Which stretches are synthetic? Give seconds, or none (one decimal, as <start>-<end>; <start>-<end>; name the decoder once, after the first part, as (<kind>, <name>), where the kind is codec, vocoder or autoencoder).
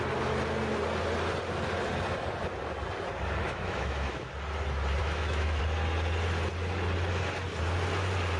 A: 3.4-4.3 (autoencoder, DAC-VAE); 5.0-5.6